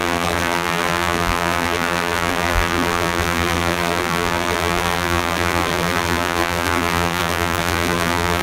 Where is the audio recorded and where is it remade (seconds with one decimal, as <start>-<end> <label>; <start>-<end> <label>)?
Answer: 0.0-8.4 remade